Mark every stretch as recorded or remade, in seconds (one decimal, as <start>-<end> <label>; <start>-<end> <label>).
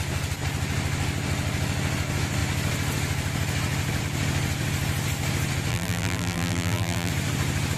0.0-5.7 recorded; 5.7-7.1 remade; 7.1-7.8 recorded